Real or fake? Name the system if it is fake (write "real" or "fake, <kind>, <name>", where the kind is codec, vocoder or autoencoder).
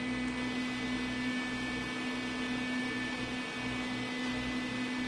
real